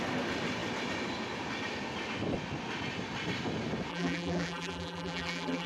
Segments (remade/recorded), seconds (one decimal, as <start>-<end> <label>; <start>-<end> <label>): 0.0-3.9 recorded; 3.9-5.7 remade